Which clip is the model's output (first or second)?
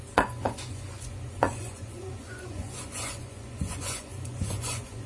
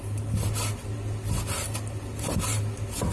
first